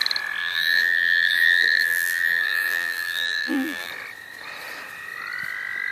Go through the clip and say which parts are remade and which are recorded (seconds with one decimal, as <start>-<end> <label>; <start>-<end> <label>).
0.0-0.4 recorded; 0.4-3.9 remade; 3.9-5.9 recorded